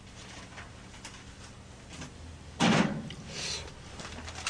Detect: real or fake real